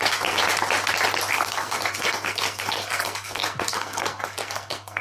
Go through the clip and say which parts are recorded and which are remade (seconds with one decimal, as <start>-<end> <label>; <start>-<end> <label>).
0.0-0.4 remade; 0.4-1.3 recorded; 1.3-5.0 remade